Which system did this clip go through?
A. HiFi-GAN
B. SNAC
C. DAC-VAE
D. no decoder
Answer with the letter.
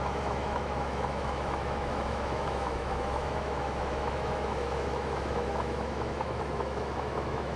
C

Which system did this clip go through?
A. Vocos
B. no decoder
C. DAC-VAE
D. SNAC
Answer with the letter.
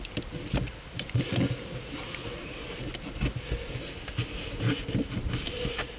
B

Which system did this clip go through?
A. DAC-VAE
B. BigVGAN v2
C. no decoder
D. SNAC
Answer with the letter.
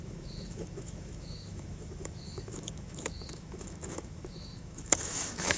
A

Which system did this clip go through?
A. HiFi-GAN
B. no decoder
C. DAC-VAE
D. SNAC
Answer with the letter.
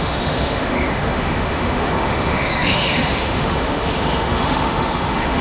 C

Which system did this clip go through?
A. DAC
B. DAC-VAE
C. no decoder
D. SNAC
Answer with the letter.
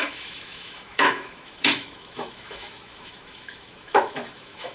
B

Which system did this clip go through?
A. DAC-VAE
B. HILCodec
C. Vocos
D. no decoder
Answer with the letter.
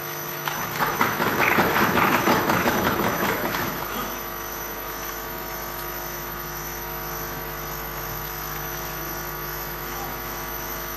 A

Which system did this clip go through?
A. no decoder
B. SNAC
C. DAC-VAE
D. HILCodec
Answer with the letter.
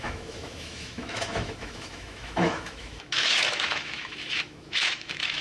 C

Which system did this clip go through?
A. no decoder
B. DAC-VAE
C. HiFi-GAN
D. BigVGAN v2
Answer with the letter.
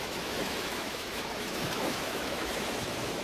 B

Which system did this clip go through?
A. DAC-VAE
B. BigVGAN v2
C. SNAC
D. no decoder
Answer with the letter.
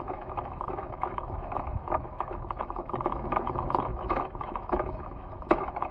A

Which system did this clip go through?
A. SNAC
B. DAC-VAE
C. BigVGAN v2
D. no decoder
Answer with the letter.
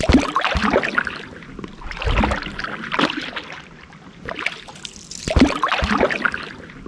D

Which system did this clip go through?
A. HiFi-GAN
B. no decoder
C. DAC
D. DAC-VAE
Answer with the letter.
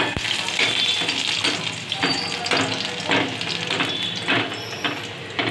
B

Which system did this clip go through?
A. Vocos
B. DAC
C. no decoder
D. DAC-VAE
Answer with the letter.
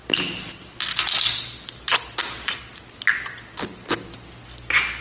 C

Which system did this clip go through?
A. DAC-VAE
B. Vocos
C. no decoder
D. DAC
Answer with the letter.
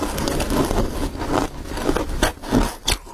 C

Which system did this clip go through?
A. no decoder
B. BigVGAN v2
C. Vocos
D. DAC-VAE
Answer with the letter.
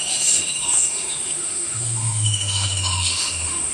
D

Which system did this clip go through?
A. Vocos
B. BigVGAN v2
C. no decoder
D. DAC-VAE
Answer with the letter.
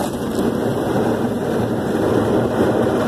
C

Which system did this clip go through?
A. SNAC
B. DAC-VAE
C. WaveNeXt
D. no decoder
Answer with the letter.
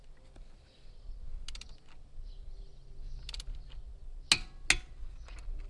D